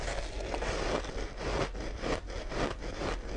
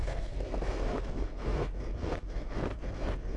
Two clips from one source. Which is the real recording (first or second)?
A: first